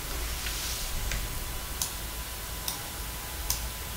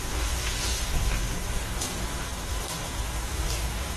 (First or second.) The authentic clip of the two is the first